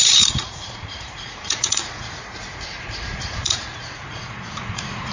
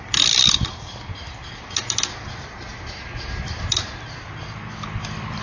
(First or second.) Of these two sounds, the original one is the second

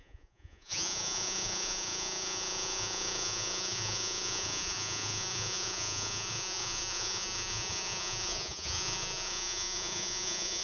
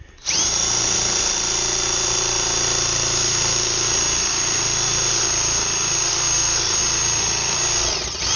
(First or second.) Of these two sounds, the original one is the second